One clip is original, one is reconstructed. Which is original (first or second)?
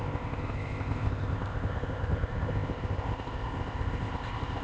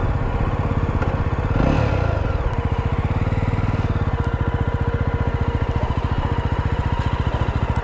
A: second